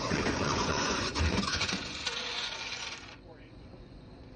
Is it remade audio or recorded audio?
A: remade